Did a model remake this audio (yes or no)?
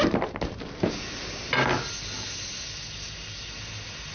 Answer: no